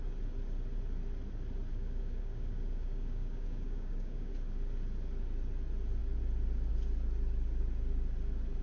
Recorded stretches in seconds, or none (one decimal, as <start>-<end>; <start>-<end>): 0.0-1.7; 4.3-8.6